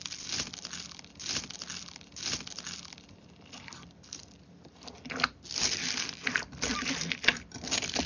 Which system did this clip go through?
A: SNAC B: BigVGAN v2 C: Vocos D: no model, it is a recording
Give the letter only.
D